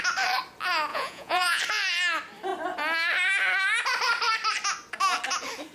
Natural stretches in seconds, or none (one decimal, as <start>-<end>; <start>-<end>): 0.0-0.9; 1.6-5.7